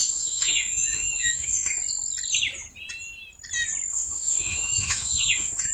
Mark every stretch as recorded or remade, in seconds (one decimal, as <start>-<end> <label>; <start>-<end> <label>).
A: 0.0-1.8 remade; 1.8-3.9 recorded; 3.9-5.7 remade